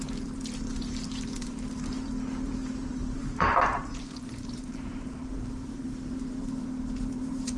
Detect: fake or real fake